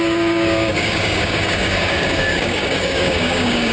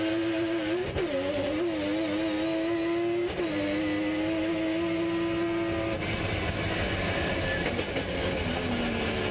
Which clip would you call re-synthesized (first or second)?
first